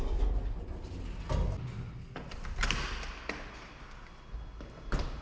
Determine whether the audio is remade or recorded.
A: recorded